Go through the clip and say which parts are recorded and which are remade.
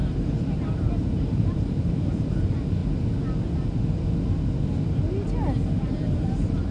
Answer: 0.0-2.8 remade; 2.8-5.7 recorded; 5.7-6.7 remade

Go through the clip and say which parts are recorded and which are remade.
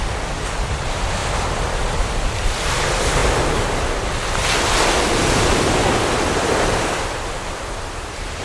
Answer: 0.0-1.2 remade; 1.2-2.2 recorded; 2.2-3.2 remade; 3.2-6.6 recorded; 6.6-8.4 remade